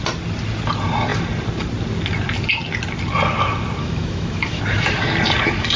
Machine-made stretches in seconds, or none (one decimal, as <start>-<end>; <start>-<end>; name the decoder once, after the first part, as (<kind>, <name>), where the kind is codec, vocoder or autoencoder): 3.8-4.6 (autoencoder, DAC-VAE)